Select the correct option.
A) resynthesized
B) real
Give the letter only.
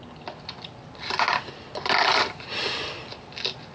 B